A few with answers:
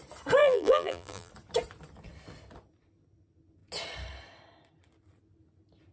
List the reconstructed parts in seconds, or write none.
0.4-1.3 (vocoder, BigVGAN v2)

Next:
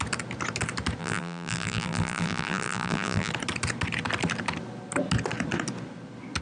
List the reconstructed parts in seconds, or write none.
1.0-3.3 (vocoder, BigVGAN v2)

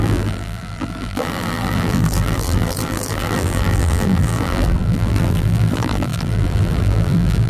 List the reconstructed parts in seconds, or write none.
0.0-7.5 (vocoder, BigVGAN v2)

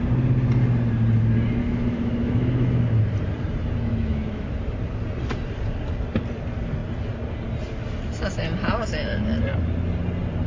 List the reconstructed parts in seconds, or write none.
1.6-2.8 (autoencoder, DAC-VAE); 3.9-4.7

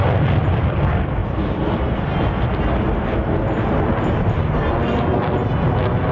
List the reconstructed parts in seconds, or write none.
none